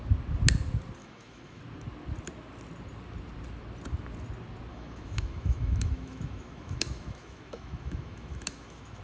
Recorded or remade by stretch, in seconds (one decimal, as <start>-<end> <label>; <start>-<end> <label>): 0.0-1.0 recorded; 1.0-1.6 remade; 1.6-4.7 recorded; 4.7-9.0 remade